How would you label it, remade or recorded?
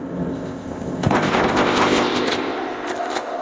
remade